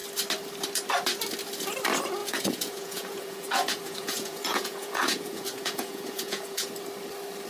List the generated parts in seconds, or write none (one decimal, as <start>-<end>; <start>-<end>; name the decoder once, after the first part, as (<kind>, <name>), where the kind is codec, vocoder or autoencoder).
2.2-6.7 (vocoder, Vocos)